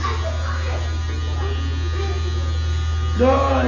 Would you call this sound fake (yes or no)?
no